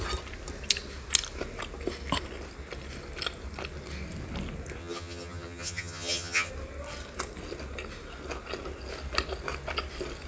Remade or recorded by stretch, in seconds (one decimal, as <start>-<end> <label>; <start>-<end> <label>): 0.0-4.8 recorded; 4.8-6.5 remade; 6.5-10.3 recorded